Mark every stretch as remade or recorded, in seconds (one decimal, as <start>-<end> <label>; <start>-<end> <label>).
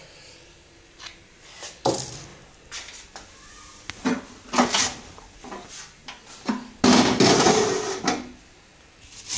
0.0-9.4 recorded